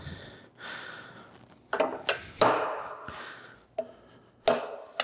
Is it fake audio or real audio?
real